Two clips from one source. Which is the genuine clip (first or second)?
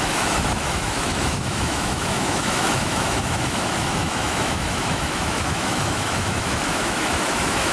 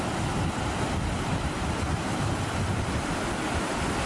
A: second